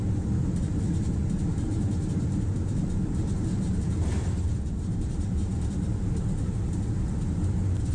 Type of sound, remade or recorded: recorded